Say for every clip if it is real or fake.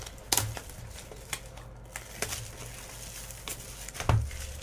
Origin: real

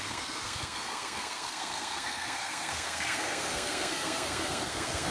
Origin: fake